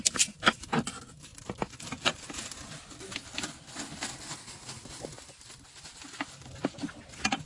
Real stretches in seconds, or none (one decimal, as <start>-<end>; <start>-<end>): 0.0-7.5